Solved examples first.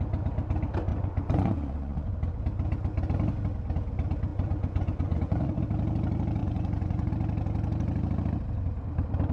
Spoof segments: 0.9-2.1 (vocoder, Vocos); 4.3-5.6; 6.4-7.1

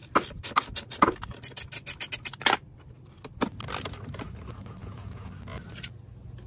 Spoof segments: 4.8-5.3 (vocoder, Vocos)

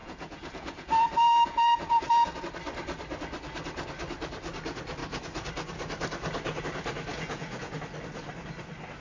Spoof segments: 0.0-2.4 (vocoder, Vocos); 7.1-7.7

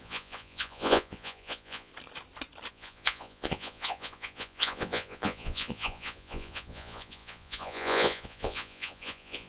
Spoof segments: 0.0-1.9 (vocoder, Vocos); 2.7-9.5

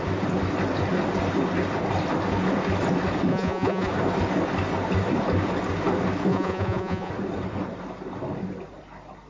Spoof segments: 3.3-3.9 (vocoder, Vocos); 6.3-7.1

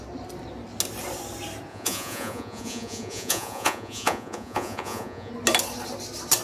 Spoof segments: 1.7-5.3 (vocoder, Vocos)

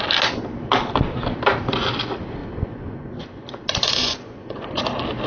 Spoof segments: 2.4-4.8 (vocoder, Vocos)